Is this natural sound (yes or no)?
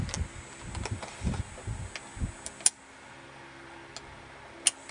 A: yes